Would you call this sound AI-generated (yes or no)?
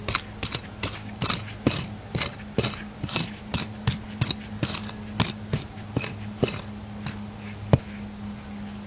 no